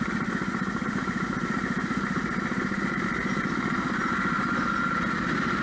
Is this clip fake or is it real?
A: real